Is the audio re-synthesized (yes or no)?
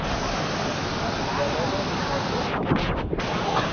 no